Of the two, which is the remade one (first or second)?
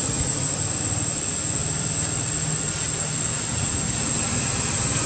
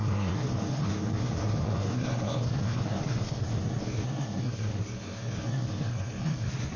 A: second